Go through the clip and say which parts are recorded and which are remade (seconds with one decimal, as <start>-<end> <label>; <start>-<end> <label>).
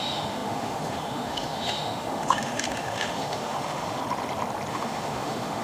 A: 0.0-4.0 remade; 4.0-4.7 recorded; 4.7-5.6 remade